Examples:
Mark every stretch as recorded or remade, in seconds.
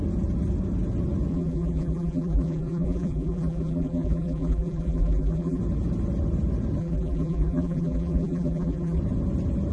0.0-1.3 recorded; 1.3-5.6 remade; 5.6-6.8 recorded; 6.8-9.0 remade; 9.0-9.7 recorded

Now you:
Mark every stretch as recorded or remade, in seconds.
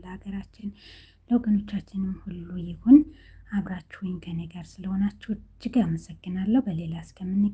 0.0-7.5 recorded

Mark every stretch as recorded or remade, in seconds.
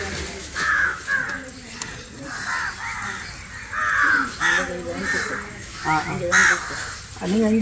0.0-0.4 recorded; 0.4-1.0 remade; 1.0-5.5 recorded; 5.5-6.1 remade; 6.1-7.6 recorded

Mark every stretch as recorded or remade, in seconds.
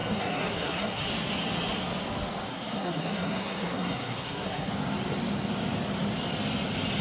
0.0-1.1 remade; 1.1-2.5 recorded; 2.5-4.7 remade; 4.7-7.0 recorded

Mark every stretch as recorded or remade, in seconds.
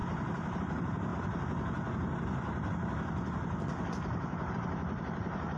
0.0-1.1 remade; 1.1-4.5 recorded; 4.5-5.6 remade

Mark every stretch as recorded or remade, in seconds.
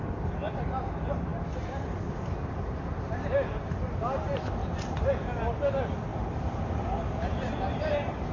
0.0-4.6 recorded; 4.6-5.1 remade; 5.1-8.3 recorded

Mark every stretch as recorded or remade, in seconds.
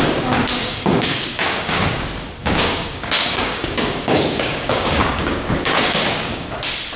0.0-0.6 recorded; 0.6-2.0 remade; 2.0-2.4 recorded; 2.4-6.6 remade; 6.6-7.0 recorded